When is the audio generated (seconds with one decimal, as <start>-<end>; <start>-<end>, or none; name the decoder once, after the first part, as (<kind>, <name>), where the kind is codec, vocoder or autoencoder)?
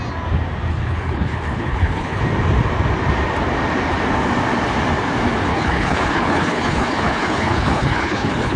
0.7-2.2 (codec, HILCodec); 5.5-8.6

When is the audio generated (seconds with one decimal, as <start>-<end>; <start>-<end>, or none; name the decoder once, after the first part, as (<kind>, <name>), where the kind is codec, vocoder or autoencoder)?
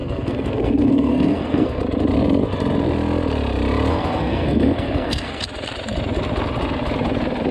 0.0-1.8 (codec, SNAC); 3.9-5.4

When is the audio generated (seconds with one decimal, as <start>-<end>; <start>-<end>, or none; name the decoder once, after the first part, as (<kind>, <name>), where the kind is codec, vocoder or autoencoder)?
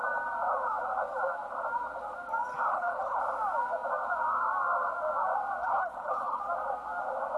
2.7-3.2 (codec, HILCodec); 5.6-6.4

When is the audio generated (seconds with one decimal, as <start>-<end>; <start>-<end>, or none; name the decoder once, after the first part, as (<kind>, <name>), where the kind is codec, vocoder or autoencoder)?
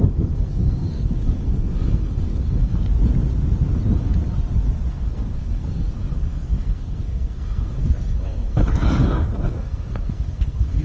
0.0-2.7 (codec, SNAC); 4.9-10.8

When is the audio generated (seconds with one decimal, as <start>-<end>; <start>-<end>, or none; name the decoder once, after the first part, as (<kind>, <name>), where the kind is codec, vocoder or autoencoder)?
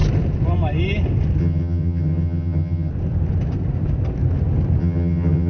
1.4-2.9 (vocoder, HiFi-GAN); 4.8-5.5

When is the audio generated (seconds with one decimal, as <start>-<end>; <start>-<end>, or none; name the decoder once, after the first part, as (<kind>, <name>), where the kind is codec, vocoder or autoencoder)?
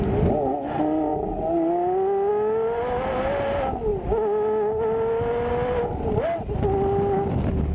none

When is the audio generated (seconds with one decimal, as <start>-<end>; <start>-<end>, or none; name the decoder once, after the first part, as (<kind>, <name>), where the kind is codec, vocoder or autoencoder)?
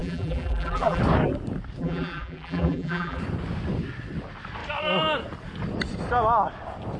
0.0-1.0 (vocoder, BigVGAN v2); 1.8-3.2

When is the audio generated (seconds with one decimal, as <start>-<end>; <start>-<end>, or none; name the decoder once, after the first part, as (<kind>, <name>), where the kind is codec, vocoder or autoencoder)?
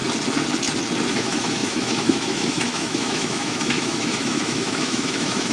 1.1-5.5 (autoencoder, DAC-VAE)